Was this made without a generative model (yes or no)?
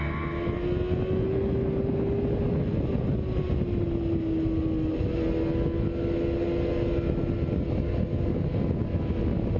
yes